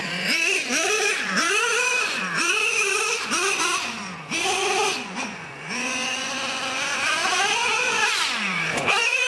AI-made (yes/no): yes